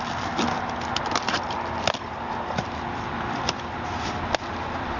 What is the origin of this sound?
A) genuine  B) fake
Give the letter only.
A